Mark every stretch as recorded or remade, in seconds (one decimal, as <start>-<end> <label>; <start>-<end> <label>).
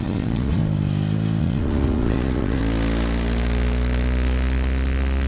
0.0-0.6 remade; 0.6-1.4 recorded; 1.4-2.6 remade; 2.6-5.3 recorded